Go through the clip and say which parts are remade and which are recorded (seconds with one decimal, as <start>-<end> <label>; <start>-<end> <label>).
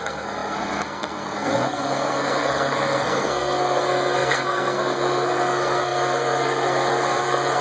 0.0-7.6 remade